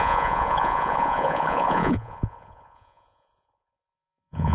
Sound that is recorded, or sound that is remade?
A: remade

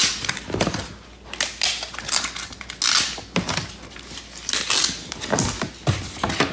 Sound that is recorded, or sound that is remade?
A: recorded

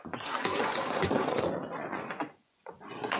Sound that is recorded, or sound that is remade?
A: remade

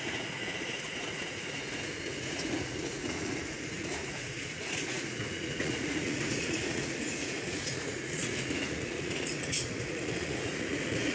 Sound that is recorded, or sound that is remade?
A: remade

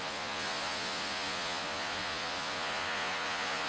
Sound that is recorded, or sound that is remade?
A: remade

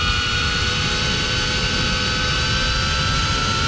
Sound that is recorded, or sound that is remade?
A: recorded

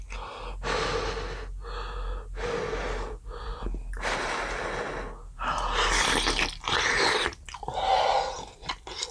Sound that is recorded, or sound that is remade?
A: recorded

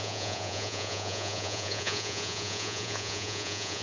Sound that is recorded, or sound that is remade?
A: remade